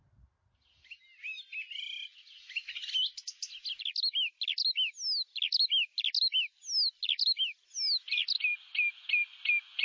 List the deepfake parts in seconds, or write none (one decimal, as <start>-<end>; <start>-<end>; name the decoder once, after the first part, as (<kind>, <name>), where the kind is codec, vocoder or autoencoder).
none